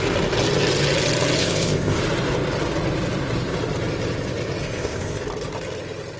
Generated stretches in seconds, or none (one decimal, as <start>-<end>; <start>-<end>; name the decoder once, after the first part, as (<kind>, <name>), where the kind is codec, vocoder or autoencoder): 1.4-2.0 (codec, ZipCodec); 4.6-5.2